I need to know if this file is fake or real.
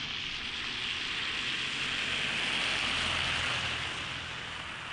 real